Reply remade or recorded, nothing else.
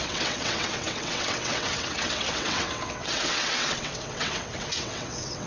remade